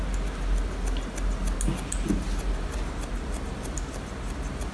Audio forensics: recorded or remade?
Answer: recorded